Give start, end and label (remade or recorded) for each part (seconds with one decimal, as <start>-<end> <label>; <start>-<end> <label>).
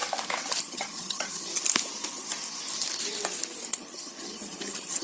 0.0-0.6 recorded; 0.6-1.5 remade; 1.5-3.7 recorded; 3.7-5.0 remade